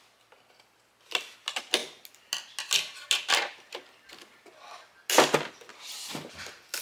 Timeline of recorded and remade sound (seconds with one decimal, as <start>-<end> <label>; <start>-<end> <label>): 0.0-6.8 recorded